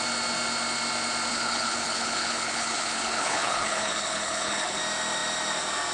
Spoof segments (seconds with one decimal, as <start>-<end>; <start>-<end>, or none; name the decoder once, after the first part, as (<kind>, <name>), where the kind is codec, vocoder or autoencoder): 1.3-4.8 (codec, HILCodec)